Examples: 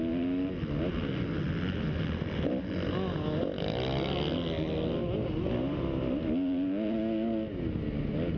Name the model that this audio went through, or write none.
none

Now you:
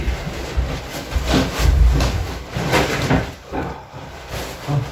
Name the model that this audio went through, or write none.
none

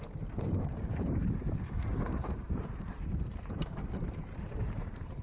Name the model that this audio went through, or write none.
vocoder, BigVGAN v2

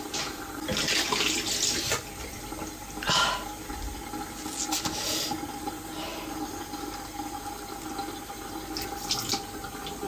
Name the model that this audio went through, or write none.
none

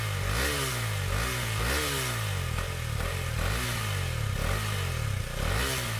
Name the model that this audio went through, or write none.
none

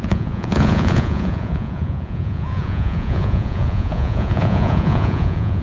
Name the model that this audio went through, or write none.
vocoder, Vocos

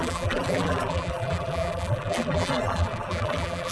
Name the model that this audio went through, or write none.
vocoder, BigVGAN v2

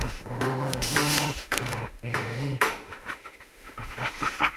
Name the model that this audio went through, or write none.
autoencoder, DAC-VAE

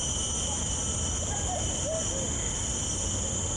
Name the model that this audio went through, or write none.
none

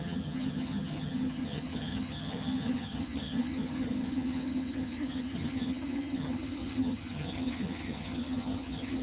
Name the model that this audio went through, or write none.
vocoder, HiFi-GAN